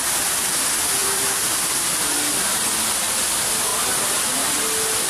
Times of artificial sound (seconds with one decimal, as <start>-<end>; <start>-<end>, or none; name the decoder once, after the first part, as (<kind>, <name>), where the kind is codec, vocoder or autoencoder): 1.0-2.1 (vocoder, BigVGAN v2)